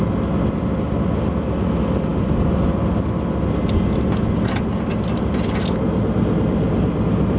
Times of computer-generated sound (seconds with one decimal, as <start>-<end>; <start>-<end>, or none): none